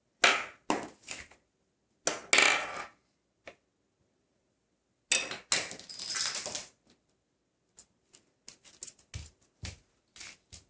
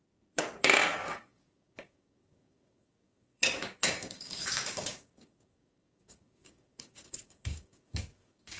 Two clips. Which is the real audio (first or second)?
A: first